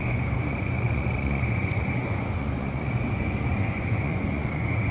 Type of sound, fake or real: fake